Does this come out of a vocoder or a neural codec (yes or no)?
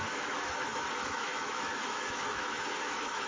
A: yes